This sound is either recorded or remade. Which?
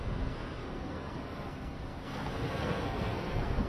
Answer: remade